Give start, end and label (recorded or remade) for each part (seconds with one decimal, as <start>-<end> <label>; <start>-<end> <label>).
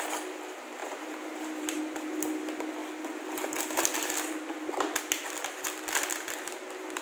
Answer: 0.0-0.8 recorded; 0.8-1.8 remade; 1.8-7.0 recorded